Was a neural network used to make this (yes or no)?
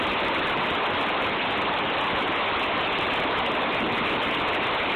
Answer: no